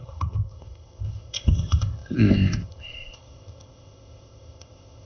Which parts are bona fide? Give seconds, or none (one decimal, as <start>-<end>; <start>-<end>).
none